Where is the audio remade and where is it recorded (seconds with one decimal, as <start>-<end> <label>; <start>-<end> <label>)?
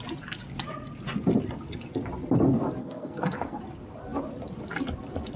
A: 0.0-2.8 recorded; 2.8-3.6 remade; 3.6-5.4 recorded